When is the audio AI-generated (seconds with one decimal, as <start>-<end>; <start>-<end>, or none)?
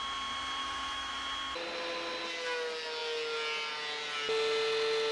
0.6-1.1